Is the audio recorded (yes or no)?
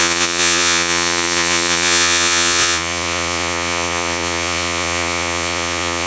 no